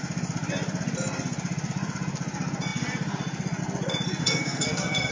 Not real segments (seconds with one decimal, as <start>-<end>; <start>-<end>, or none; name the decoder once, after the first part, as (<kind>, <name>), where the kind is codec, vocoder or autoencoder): 4.2-5.1 (codec, SNAC)